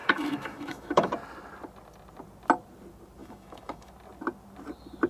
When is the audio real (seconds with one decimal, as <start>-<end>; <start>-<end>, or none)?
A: 1.1-3.2; 3.9-5.1